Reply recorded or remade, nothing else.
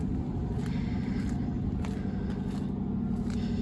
recorded